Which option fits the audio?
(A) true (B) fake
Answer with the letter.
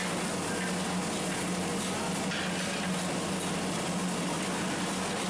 A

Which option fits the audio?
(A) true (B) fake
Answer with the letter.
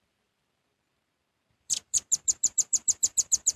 B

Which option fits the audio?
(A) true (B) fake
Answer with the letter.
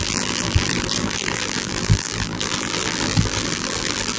B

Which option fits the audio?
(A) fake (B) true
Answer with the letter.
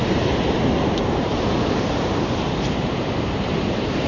A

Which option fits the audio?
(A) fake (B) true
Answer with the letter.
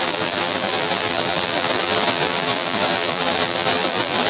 A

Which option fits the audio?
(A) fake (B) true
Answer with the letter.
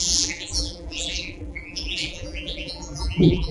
A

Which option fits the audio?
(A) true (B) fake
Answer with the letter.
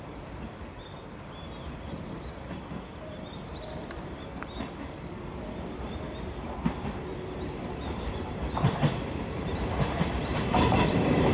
B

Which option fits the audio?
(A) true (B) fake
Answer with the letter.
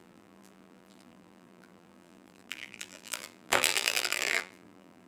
B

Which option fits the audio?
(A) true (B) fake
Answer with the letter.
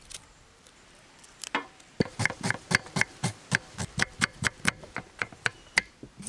B